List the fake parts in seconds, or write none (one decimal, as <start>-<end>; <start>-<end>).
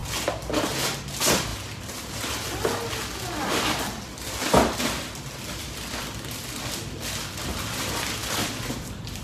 8.2-9.2